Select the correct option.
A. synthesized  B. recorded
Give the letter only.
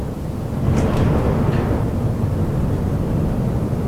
B